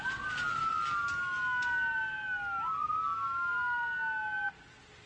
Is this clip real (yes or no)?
yes